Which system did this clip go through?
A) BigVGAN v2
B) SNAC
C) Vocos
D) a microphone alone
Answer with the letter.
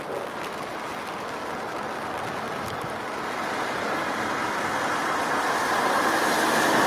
D